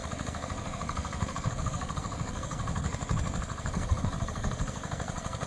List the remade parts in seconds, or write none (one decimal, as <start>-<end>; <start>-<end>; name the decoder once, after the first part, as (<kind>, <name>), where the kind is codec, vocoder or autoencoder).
0.0-5.5 (codec, SNAC)